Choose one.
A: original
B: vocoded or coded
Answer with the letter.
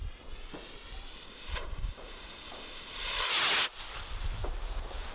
A